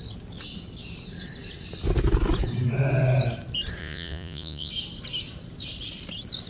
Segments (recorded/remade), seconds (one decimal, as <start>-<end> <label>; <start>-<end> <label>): 0.0-3.8 recorded; 3.8-4.7 remade; 4.7-6.5 recorded